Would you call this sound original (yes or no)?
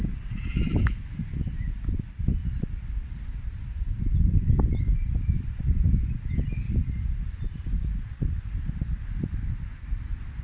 no